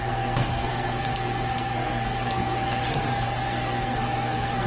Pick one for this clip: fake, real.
fake